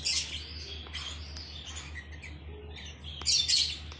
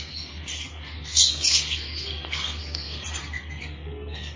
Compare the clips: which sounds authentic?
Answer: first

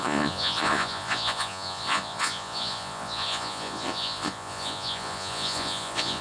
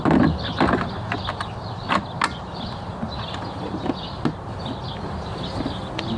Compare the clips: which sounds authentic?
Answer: second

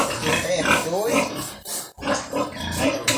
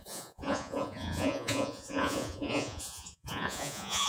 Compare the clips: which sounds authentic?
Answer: first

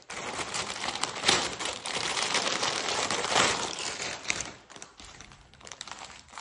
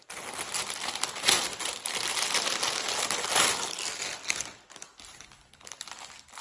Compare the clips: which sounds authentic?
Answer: second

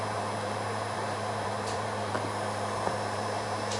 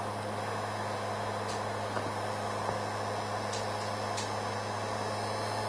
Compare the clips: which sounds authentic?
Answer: second